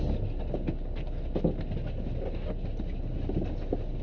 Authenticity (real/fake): real